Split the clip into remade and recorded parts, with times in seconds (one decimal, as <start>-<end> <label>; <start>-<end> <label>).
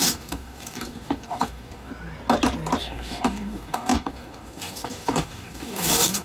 0.0-1.9 remade; 1.9-2.8 recorded; 2.8-6.2 remade